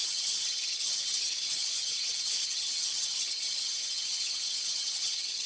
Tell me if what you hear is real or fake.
fake